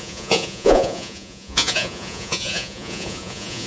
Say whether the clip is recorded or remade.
remade